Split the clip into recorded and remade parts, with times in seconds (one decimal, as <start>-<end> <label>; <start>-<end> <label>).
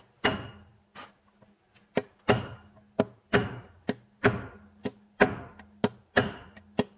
0.0-7.0 recorded